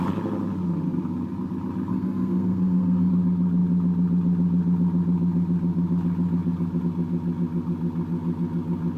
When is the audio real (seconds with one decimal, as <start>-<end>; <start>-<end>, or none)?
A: 0.0-1.9; 3.1-9.0